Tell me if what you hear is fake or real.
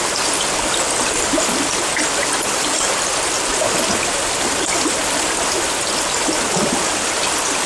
real